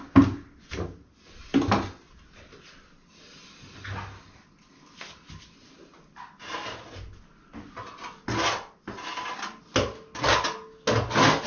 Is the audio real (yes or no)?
yes